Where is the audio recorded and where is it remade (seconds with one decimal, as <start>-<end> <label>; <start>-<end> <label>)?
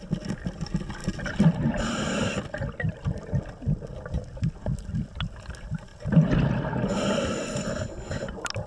0.0-8.7 recorded